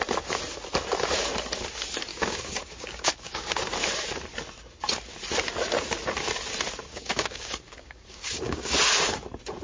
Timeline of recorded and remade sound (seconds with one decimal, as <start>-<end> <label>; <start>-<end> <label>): 0.0-2.1 recorded; 2.1-3.6 remade; 3.6-6.9 recorded; 6.9-8.8 remade; 8.8-9.6 recorded